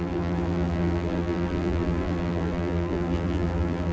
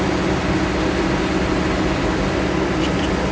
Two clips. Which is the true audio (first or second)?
second